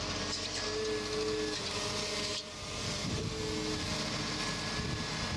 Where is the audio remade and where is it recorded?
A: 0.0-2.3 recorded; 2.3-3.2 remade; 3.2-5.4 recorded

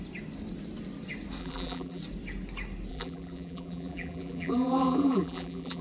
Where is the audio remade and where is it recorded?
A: 0.0-1.4 recorded; 1.4-2.0 remade; 2.0-2.9 recorded; 2.9-5.8 remade